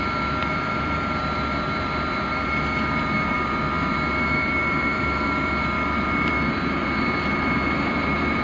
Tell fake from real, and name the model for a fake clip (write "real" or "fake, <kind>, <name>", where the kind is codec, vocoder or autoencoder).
fake, vocoder, BigVGAN v2